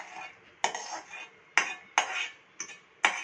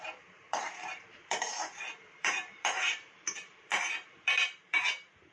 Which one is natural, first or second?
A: first